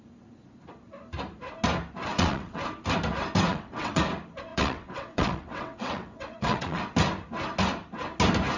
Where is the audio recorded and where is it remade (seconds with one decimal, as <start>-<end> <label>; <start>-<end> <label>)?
0.0-2.1 recorded; 2.1-2.6 remade; 2.6-3.5 recorded; 3.5-4.0 remade; 4.0-4.5 recorded; 4.5-6.8 remade; 6.8-8.6 recorded